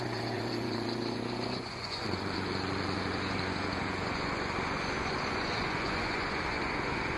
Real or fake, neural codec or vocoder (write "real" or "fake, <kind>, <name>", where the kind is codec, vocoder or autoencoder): fake, vocoder, Vocos